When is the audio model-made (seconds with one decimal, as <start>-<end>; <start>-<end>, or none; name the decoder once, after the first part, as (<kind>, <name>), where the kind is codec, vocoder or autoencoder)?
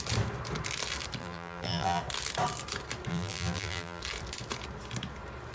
1.2-2.0 (vocoder, BigVGAN v2); 3.1-4.0